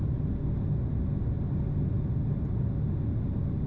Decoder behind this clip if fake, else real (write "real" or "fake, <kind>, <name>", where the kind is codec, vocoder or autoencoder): real